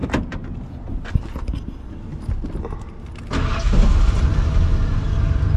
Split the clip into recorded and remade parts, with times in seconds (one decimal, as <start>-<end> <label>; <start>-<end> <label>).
0.0-5.6 recorded